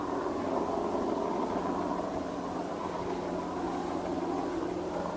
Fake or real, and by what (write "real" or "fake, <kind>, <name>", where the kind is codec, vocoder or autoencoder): real